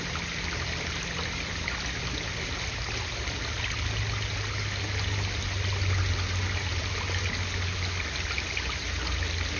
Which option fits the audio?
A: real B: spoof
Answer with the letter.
A